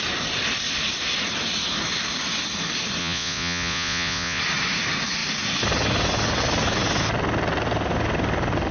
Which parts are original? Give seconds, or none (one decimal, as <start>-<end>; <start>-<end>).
0.0-3.0; 4.4-8.7